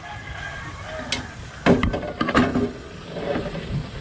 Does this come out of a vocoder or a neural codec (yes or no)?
no